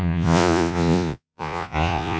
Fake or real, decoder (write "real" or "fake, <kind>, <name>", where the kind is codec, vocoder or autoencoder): fake, vocoder, Vocos